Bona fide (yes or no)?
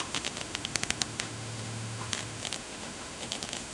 no